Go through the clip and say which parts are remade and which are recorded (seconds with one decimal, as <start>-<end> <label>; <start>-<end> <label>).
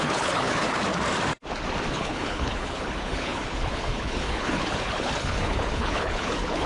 0.0-0.9 remade; 0.9-1.9 recorded; 1.9-6.7 remade